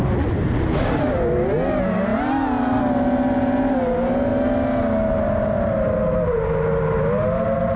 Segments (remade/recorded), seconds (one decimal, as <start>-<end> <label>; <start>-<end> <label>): 0.0-7.8 recorded